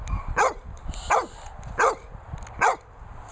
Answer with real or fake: real